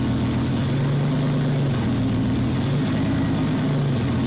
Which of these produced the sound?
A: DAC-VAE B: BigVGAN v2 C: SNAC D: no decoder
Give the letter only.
D